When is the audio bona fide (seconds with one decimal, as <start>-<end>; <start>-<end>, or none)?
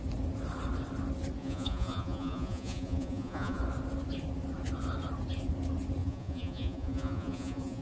0.0-1.4; 3.6-6.0